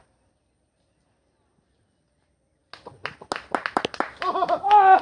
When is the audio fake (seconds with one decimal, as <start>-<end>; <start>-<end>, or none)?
none